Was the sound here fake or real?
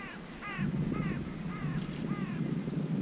real